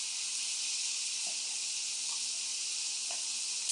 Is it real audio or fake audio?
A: real